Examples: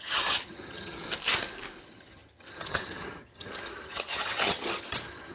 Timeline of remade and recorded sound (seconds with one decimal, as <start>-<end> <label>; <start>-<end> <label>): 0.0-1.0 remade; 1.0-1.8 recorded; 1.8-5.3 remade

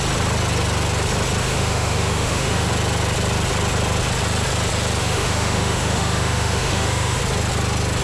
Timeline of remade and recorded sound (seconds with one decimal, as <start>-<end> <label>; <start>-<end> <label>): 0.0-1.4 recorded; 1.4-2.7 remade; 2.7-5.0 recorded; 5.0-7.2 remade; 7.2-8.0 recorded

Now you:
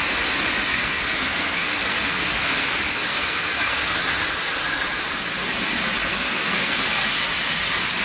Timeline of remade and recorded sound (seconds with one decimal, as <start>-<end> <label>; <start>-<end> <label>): 0.0-0.7 recorded; 0.7-4.0 remade; 4.0-6.1 recorded; 6.1-7.2 remade; 7.2-8.0 recorded

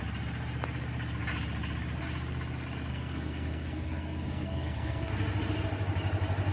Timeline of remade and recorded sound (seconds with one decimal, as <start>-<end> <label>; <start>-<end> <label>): 0.0-2.9 recorded; 2.9-5.1 remade; 5.1-6.5 recorded

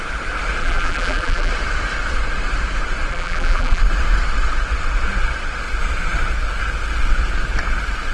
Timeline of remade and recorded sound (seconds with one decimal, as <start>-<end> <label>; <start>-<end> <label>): 0.0-0.6 recorded; 0.6-1.5 remade; 1.5-3.1 recorded; 3.1-3.8 remade; 3.8-8.1 recorded

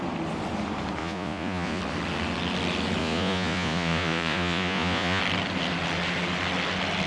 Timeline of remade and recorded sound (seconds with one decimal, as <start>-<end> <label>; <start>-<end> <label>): 0.0-1.0 recorded; 1.0-1.8 remade; 1.8-3.0 recorded; 3.0-5.2 remade; 5.2-7.1 recorded

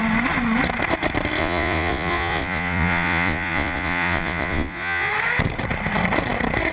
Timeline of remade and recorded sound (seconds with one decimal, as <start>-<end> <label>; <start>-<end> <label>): 0.0-1.4 recorded; 1.4-5.1 remade; 5.1-6.7 recorded

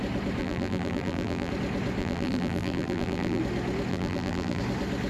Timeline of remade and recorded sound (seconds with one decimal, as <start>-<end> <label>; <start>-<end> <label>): 0.0-0.4 recorded; 0.4-1.5 remade; 1.5-2.0 recorded; 2.0-3.4 remade; 3.4-3.9 recorded; 3.9-4.6 remade; 4.6-5.1 recorded